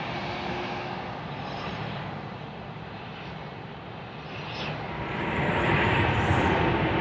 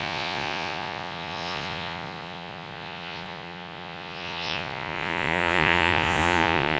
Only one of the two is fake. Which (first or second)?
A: second